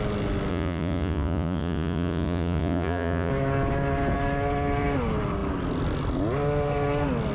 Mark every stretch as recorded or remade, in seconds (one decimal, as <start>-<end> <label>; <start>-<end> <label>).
0.0-0.5 recorded; 0.5-3.3 remade; 3.3-7.3 recorded